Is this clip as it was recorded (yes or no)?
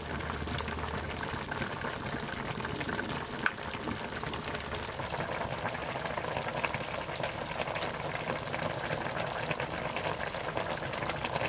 yes